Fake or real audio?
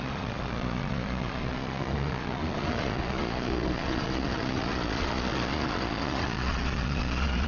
fake